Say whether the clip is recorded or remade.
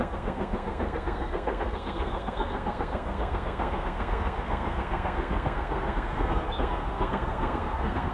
remade